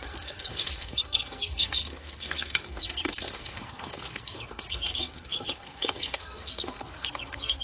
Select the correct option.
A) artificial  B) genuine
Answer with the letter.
A